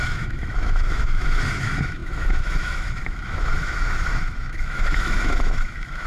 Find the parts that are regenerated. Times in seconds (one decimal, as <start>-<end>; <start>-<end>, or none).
0.0-6.1

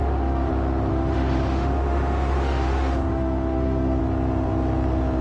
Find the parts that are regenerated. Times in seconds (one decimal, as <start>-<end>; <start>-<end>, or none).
0.0-0.5; 0.9-4.0